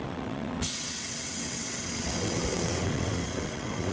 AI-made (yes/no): yes